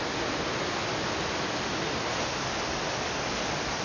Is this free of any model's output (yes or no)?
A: yes